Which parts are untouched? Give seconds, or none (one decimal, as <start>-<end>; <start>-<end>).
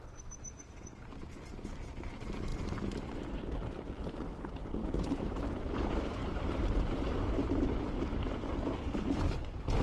0.0-4.8; 5.5-6.2; 7.5-9.8